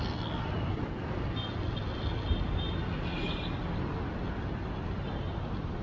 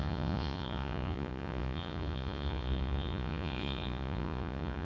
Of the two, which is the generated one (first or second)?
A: second